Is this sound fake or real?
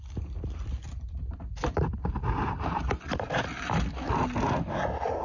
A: real